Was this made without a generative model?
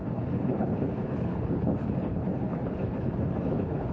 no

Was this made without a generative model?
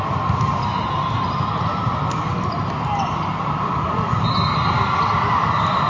yes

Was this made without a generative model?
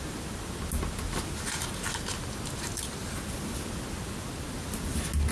yes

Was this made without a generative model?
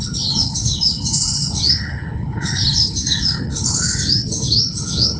no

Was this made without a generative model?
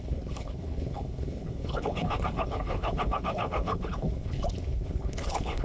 no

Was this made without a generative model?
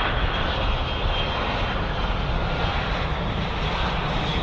yes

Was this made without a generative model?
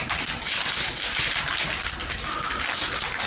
yes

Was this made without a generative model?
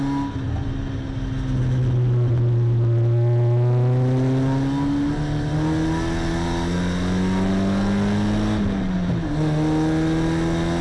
yes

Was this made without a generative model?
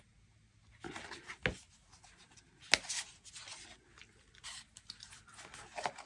yes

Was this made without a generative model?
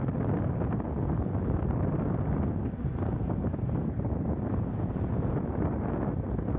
yes